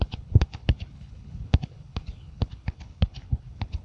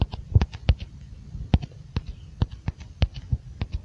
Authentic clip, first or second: second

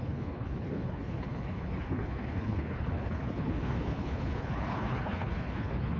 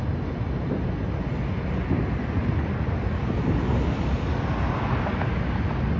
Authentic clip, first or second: second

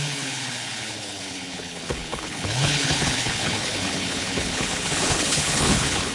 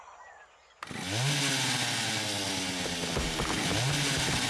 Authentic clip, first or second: second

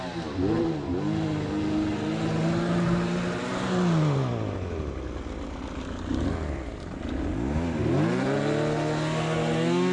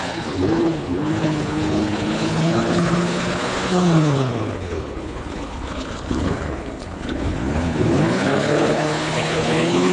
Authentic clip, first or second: first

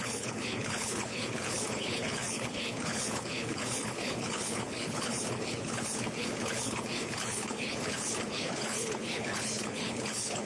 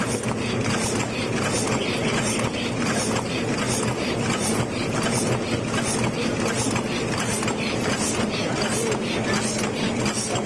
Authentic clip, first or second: second